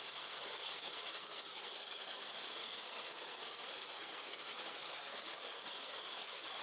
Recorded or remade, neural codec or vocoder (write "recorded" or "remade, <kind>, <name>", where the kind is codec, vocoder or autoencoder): remade, codec, SNAC